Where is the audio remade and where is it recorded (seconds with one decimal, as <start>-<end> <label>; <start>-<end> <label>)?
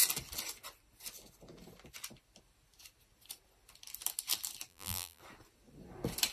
0.0-4.7 recorded; 4.7-5.2 remade; 5.2-6.3 recorded